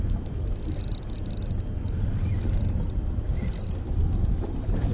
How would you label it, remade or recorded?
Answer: recorded